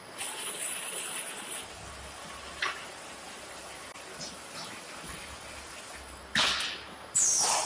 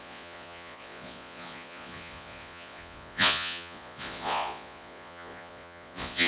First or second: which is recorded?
first